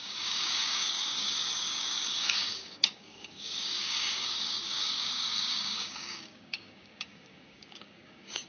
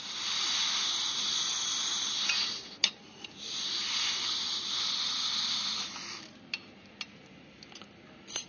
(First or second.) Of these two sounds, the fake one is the first